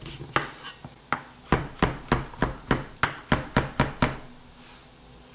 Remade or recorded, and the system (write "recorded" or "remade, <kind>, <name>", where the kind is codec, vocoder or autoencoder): recorded